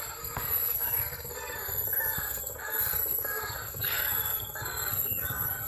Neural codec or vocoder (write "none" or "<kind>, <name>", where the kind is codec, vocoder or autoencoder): codec, SNAC